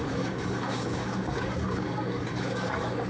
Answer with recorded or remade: remade